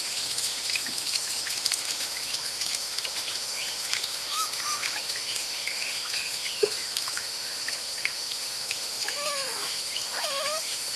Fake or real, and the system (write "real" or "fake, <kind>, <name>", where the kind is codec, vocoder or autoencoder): fake, autoencoder, DAC-VAE